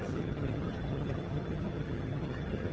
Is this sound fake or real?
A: fake